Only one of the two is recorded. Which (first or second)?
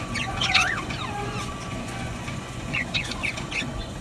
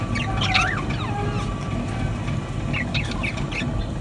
second